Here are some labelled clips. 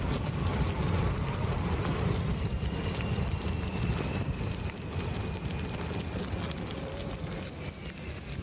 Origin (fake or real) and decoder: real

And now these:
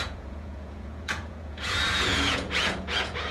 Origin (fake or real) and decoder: fake, vocoder, Vocos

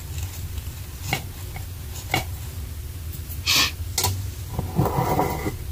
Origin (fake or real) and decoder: real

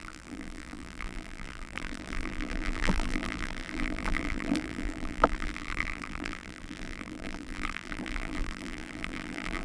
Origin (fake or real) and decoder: fake, vocoder, BigVGAN v2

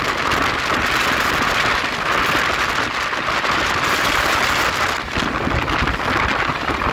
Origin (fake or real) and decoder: real